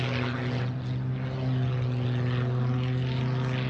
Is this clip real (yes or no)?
yes